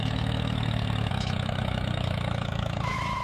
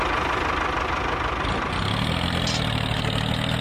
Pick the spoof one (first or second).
first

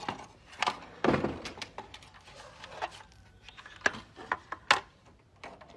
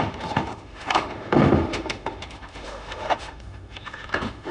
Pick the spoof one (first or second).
second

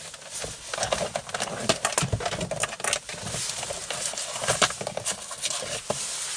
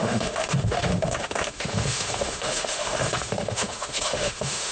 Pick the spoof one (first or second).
second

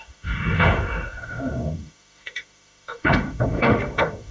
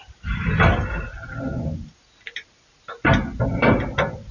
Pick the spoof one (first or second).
first